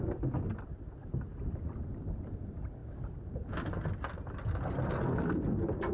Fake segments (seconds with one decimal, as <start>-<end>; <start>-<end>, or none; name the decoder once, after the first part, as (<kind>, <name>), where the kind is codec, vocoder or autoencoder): 0.0-2.8 (vocoder, BigVGAN v2); 5.5-5.9